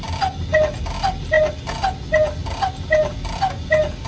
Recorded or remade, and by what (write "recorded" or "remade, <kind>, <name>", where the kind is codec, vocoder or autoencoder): recorded